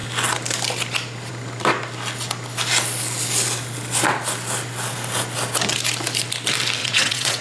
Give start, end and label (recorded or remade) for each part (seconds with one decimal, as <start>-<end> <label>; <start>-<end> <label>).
0.0-6.8 recorded; 6.8-7.4 remade